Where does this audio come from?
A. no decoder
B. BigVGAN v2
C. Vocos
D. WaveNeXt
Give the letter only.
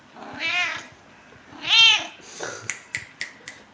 A